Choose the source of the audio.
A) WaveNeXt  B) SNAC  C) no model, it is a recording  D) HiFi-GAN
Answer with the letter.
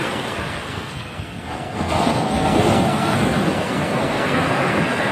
B